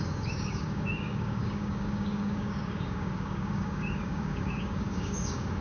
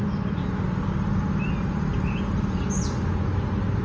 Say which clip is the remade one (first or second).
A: first